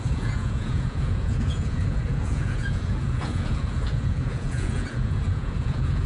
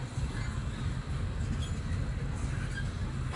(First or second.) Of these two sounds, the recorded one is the second